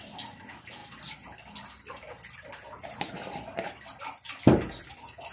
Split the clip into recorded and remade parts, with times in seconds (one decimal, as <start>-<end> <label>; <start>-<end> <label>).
0.0-0.8 recorded; 0.8-4.0 remade; 4.0-5.3 recorded

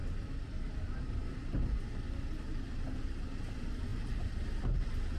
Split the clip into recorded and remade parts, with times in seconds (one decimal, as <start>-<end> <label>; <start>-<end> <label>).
0.0-1.8 remade; 1.8-3.9 recorded; 3.9-4.6 remade; 4.6-5.2 recorded

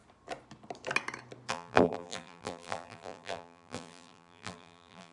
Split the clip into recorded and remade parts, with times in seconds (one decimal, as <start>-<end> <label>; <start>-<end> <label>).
0.0-1.5 recorded; 1.5-5.1 remade

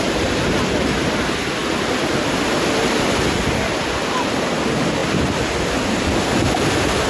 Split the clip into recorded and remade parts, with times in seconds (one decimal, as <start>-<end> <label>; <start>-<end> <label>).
0.0-7.1 recorded